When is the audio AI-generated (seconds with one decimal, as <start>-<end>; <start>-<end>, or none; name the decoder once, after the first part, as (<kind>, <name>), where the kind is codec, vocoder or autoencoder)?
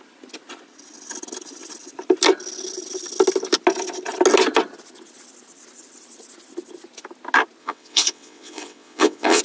7.6-9.4 (vocoder, WaveNeXt)